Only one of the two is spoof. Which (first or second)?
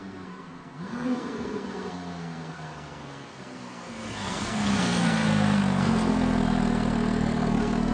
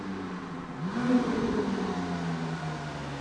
first